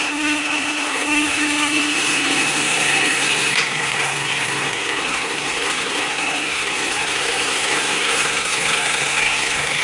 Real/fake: fake